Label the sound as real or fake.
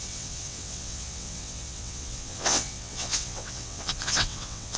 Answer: fake